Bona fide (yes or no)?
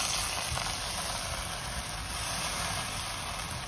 yes